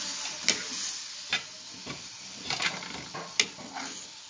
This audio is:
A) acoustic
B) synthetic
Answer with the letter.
A